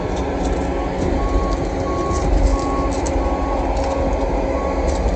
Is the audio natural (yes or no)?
yes